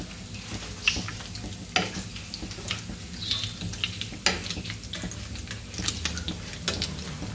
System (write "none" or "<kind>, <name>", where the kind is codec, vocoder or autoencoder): none